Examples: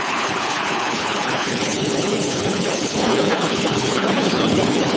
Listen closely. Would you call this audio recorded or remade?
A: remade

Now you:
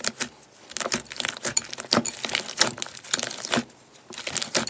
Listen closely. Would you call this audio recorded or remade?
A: recorded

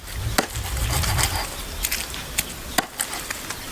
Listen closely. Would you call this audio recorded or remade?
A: recorded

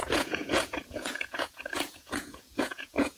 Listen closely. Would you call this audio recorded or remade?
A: remade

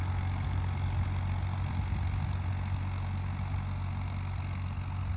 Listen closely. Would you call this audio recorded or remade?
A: recorded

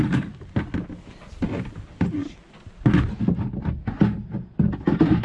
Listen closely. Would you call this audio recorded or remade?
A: recorded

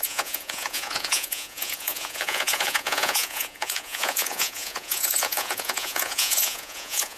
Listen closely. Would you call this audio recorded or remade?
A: remade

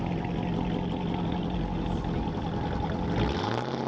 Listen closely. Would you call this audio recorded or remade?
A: recorded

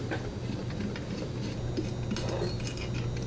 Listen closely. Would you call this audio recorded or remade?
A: recorded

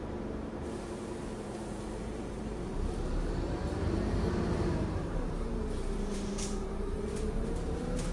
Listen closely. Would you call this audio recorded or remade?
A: remade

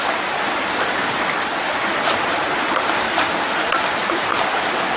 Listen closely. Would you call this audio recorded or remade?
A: recorded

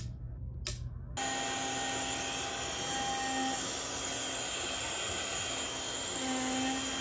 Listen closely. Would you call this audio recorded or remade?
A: recorded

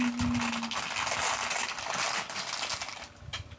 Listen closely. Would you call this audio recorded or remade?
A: recorded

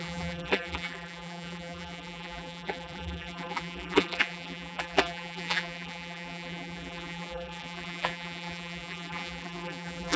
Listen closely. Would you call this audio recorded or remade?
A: remade